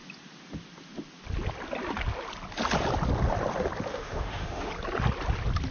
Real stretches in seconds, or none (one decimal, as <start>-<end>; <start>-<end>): 0.0-3.9; 4.7-5.7

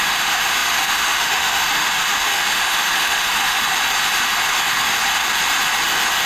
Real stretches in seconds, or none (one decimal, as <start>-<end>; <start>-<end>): 3.8-4.5; 5.0-6.3

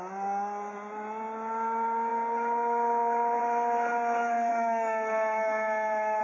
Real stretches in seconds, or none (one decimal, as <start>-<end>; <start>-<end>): 0.0-4.5

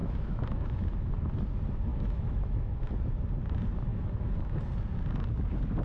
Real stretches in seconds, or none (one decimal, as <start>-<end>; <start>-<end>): 1.1-1.9; 2.9-3.9; 4.6-5.8